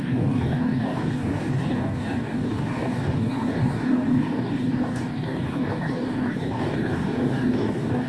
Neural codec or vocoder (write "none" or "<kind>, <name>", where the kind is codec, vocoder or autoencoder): codec, DAC